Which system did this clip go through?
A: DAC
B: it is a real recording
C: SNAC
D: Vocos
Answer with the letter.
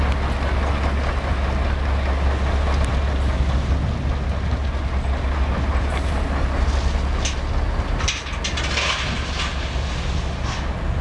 B